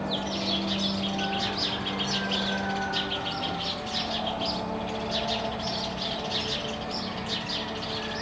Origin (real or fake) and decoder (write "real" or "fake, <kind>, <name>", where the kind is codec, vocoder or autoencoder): real